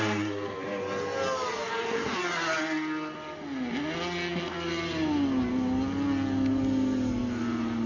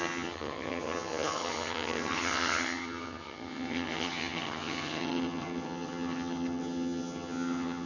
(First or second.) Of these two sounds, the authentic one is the first